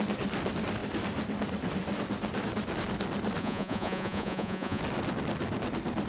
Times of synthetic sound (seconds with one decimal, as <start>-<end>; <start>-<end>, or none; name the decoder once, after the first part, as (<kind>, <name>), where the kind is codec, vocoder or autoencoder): 3.4-4.8 (vocoder, Vocos)